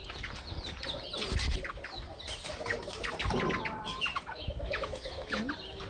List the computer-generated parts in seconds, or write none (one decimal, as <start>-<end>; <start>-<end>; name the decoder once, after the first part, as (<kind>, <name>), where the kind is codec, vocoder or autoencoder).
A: 4.1-5.4 (autoencoder, DAC-VAE)